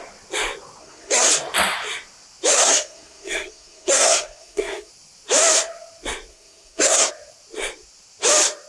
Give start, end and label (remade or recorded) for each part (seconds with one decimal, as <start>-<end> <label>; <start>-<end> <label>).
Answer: 0.0-0.8 recorded; 0.8-1.3 remade; 1.3-2.5 recorded; 2.5-4.9 remade; 4.9-6.3 recorded; 6.3-7.1 remade; 7.1-8.7 recorded